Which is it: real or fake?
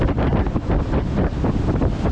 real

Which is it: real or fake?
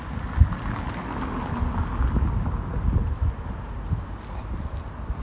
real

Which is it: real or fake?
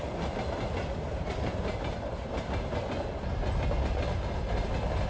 real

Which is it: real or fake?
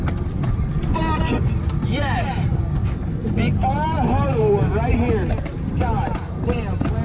real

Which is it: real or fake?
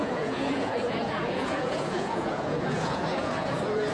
fake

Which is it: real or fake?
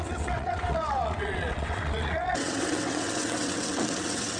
fake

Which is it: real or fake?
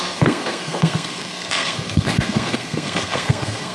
fake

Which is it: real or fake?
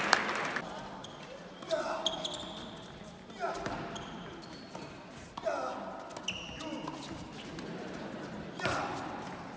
real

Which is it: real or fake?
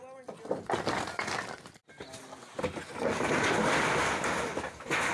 real